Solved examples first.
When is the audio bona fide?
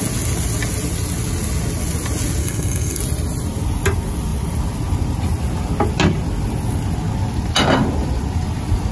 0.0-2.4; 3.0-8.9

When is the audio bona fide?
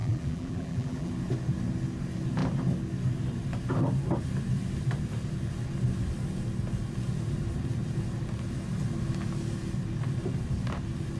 1.1-11.2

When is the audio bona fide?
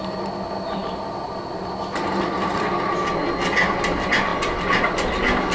0.0-5.5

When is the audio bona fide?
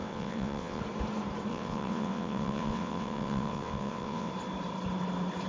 0.8-1.5; 4.3-5.5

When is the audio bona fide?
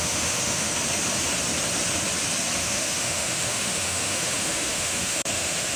0.7-2.6